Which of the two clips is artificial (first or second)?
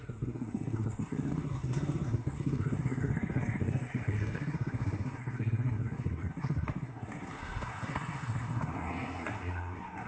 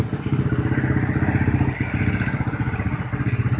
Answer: first